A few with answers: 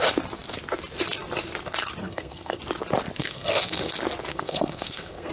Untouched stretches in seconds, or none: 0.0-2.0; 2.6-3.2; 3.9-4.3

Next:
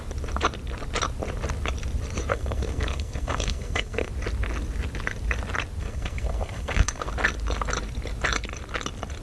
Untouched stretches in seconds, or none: 0.0-2.3; 4.1-5.8; 7.1-9.2

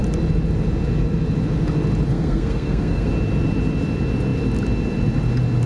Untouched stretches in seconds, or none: 0.0-2.1; 3.1-5.7

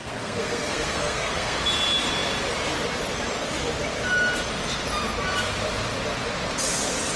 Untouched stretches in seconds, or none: 1.6-7.2

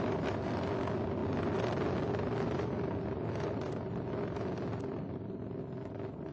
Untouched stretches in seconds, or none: 0.0-6.3

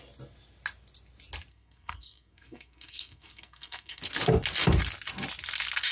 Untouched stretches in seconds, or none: 0.0-1.5; 4.0-5.9

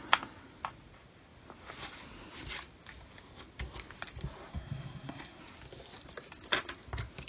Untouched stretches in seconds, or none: 0.0-4.5; 5.4-7.3

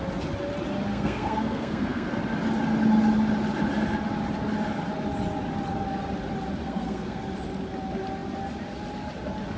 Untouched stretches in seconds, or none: 0.0-0.9; 2.1-6.6; 7.2-9.6